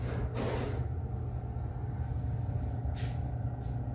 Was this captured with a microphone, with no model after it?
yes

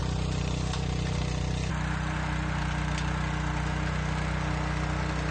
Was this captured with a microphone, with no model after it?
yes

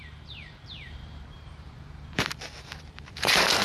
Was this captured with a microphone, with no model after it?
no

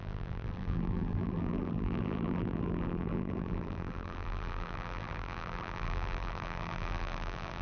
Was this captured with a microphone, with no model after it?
no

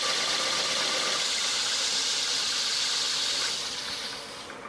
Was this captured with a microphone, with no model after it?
yes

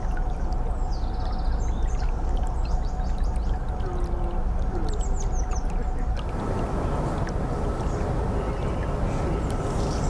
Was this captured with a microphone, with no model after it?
yes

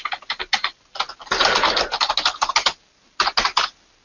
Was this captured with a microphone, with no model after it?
yes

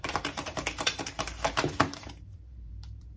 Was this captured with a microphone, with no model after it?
no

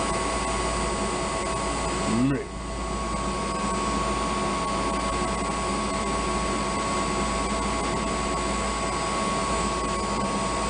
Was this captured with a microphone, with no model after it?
yes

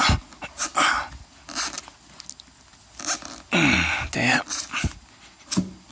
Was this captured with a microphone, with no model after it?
yes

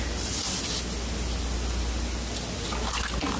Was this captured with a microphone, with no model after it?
yes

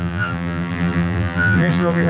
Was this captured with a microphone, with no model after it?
no